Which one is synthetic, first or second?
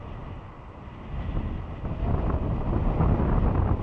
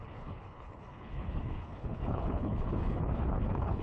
second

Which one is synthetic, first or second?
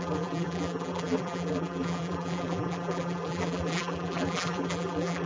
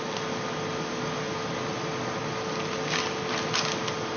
first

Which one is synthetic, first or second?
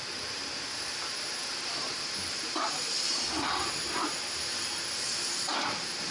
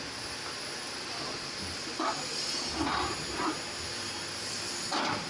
first